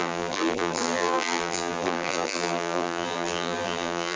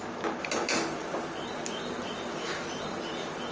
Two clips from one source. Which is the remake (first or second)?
first